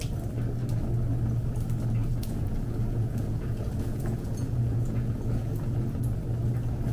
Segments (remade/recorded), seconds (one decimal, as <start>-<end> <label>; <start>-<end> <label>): 0.0-2.0 recorded; 2.0-5.9 remade; 5.9-6.9 recorded